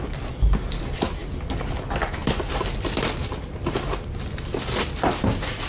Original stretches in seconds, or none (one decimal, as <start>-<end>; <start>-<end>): 0.0-5.7